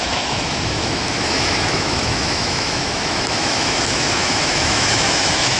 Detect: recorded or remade remade